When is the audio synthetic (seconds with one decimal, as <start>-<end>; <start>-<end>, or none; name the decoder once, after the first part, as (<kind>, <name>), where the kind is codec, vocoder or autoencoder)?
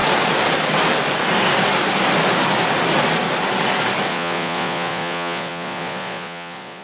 4.1-6.8 (vocoder, Vocos)